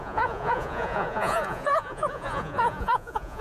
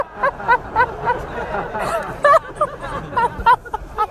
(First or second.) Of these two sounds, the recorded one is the second